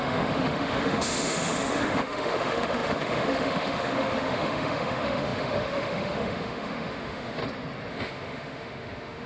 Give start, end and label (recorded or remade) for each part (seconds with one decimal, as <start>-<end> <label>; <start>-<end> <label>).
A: 0.0-7.4 remade; 7.4-7.9 recorded; 7.9-9.3 remade